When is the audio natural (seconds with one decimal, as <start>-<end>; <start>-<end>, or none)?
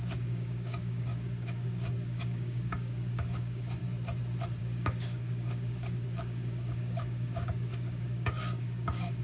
3.8-4.6